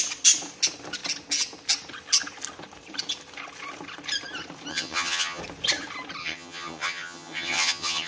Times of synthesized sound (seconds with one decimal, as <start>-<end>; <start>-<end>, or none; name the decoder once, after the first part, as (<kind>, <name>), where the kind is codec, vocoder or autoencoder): 4.7-5.4 (vocoder, HiFi-GAN); 6.2-8.1